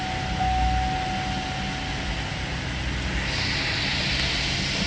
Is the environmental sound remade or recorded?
recorded